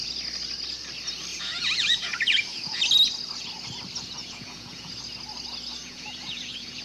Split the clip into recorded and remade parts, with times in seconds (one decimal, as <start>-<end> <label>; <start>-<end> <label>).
0.0-1.3 recorded; 1.3-2.8 remade; 2.8-4.2 recorded; 4.2-5.0 remade; 5.0-5.8 recorded; 5.8-6.8 remade